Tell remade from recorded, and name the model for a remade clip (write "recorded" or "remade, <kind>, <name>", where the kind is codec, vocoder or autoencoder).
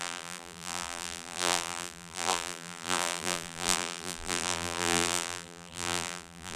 remade, vocoder, BigVGAN v2